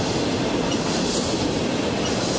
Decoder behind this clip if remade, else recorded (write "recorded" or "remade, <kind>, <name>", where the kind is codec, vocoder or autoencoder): recorded